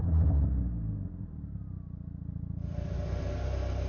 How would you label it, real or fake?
real